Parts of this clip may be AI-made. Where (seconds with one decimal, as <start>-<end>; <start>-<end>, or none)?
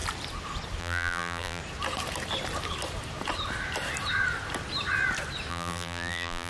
0.8-1.6; 5.5-6.5